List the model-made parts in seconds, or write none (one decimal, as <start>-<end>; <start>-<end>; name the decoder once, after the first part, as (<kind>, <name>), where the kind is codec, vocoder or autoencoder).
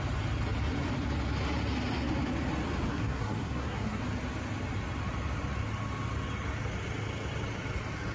2.9-4.0 (codec, SNAC)